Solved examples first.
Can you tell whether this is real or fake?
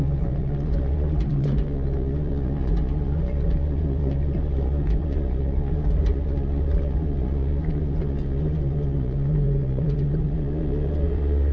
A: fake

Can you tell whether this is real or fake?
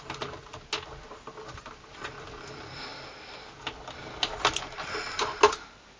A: real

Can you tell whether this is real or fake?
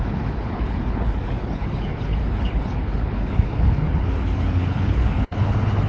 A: fake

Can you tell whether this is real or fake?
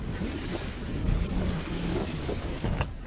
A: fake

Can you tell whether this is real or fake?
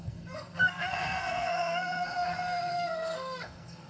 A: fake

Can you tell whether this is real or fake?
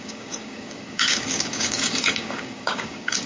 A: fake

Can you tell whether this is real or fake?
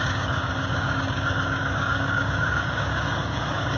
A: fake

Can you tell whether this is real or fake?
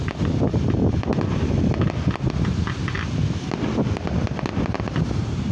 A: real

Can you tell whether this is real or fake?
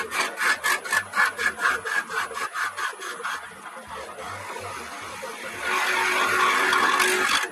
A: real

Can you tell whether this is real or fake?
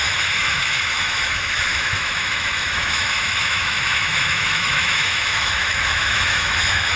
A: fake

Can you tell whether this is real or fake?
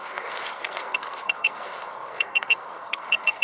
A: fake